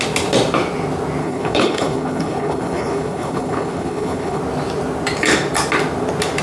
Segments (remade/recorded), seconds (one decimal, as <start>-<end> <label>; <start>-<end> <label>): 0.0-1.2 recorded; 1.2-4.4 remade; 4.4-6.4 recorded